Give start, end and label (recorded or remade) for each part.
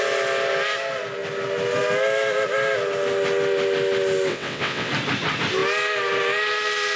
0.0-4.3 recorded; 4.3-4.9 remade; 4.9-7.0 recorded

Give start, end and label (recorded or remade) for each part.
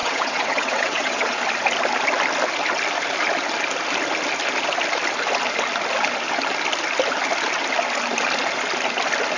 0.0-1.4 remade; 1.4-9.4 recorded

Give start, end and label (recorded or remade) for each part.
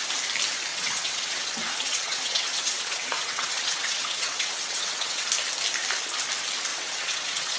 0.0-0.7 recorded; 0.7-5.3 remade; 5.3-6.7 recorded; 6.7-7.6 remade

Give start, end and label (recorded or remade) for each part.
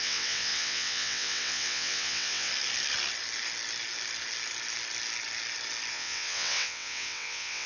0.0-2.5 remade; 2.5-5.9 recorded; 5.9-7.7 remade